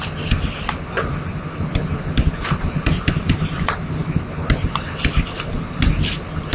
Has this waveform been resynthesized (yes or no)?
no